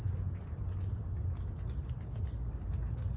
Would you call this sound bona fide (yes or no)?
yes